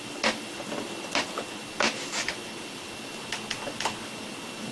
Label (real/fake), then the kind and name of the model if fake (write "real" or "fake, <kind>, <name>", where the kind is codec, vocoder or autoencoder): real